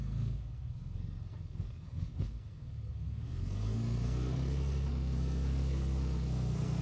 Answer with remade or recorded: remade